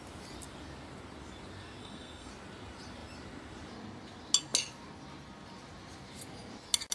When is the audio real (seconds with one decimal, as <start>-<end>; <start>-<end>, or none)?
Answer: 0.0-1.8; 2.3-6.9

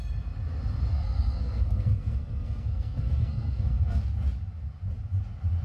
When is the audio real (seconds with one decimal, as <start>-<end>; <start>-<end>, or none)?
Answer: 0.0-0.9; 4.0-5.6

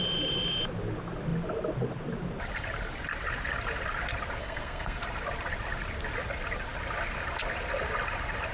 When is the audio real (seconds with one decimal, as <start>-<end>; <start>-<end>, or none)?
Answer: 0.0-4.4; 5.0-8.5

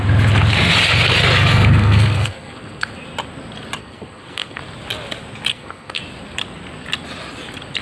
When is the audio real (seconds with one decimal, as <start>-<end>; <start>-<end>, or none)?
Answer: 0.0-1.5; 2.9-3.8; 4.6-5.5; 6.0-7.8

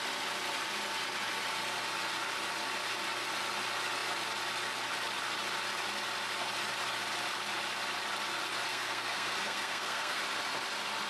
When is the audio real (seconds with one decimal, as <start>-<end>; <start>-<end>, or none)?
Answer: 0.0-8.7; 10.2-11.1

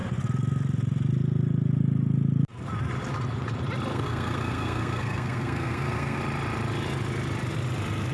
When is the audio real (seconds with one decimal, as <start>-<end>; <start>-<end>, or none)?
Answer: 0.0-3.9; 6.2-8.1

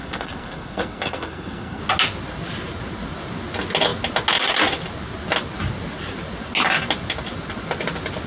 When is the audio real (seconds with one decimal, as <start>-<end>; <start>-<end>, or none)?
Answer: 1.8-8.3

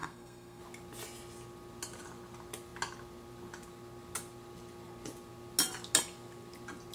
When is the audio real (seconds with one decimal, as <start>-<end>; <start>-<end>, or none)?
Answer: 0.6-6.9